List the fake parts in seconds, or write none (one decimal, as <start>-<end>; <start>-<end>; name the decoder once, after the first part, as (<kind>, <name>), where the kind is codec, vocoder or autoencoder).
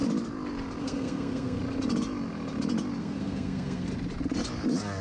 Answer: 0.8-1.6 (codec, SNAC); 3.0-3.9